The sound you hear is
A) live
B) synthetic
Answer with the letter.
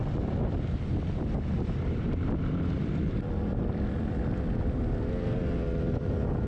A